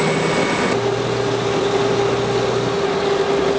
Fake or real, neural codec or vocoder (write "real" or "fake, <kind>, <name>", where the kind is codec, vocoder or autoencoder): real